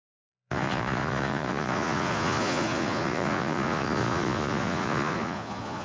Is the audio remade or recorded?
remade